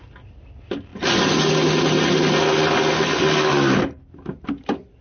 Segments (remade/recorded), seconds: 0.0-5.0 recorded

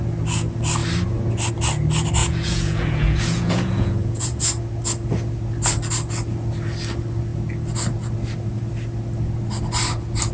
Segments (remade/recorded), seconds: 0.0-2.2 recorded; 2.2-4.4 remade; 4.4-10.3 recorded

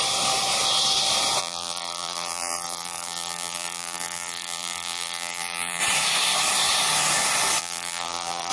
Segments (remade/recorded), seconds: 0.0-1.4 recorded; 1.4-5.8 remade; 5.8-7.6 recorded; 7.6-8.5 remade